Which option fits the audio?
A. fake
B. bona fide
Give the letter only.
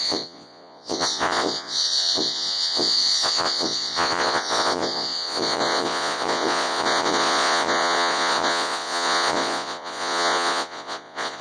A